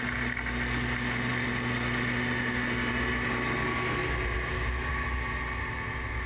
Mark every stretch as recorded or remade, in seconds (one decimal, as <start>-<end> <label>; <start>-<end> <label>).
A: 0.0-6.3 recorded